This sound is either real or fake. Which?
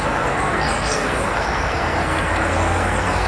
fake